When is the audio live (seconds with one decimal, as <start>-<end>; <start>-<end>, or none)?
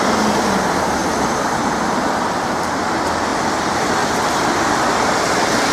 0.0-1.0; 2.9-3.3